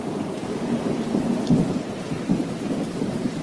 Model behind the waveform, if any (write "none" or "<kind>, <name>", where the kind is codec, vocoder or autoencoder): vocoder, BigVGAN v2